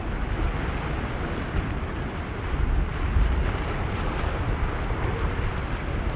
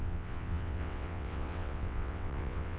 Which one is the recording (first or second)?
first